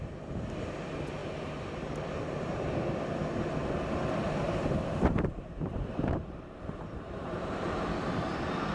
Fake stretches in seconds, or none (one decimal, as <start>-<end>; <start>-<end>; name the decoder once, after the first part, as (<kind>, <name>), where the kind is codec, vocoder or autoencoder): 1.2-2.8 (vocoder, BigVGAN v2); 3.6-7.5